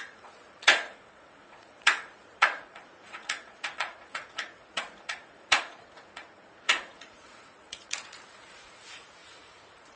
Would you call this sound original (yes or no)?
no